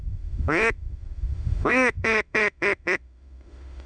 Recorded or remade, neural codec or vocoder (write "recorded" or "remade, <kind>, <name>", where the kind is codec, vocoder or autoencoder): remade, autoencoder, DAC-VAE